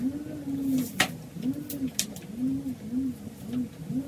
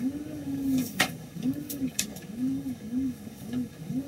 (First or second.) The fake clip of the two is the second